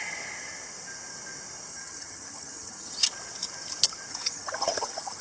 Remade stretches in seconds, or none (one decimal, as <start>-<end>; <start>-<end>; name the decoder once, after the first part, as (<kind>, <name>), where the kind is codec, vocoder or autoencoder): 1.7-2.9 (vocoder, HiFi-GAN); 4.1-5.2